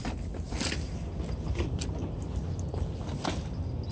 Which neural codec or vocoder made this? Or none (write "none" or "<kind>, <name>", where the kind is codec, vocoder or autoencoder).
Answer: none